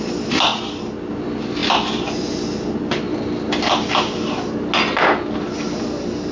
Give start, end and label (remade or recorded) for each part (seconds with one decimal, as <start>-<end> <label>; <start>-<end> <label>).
0.0-6.3 recorded